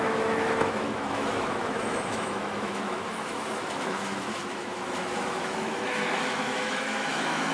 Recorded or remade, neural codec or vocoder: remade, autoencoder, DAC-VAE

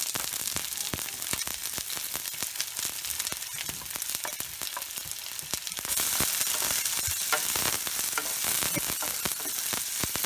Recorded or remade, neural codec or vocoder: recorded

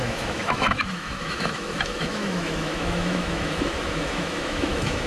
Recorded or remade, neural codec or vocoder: remade, autoencoder, DAC-VAE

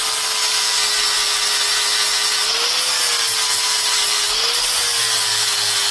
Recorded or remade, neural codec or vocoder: recorded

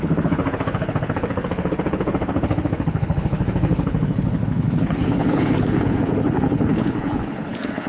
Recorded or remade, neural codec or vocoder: remade, codec, HILCodec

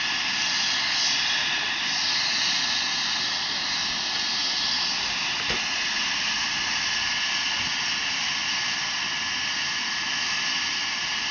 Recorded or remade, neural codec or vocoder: recorded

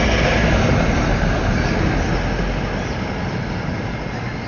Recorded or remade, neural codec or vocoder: recorded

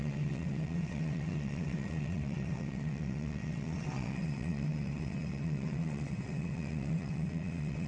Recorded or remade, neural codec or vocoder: remade, vocoder, WaveNeXt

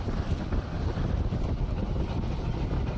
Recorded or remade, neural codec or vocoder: recorded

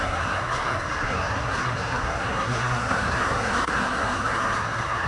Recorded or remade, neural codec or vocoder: remade, codec, SNAC